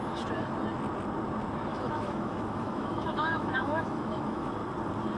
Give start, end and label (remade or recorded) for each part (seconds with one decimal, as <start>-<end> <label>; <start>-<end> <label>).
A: 0.0-1.7 recorded; 1.7-4.5 remade; 4.5-5.2 recorded